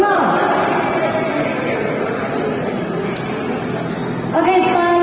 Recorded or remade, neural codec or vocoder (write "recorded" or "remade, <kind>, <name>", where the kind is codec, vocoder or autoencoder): recorded